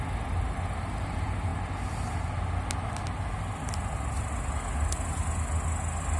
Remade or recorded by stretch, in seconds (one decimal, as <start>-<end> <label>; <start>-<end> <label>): 0.0-6.2 recorded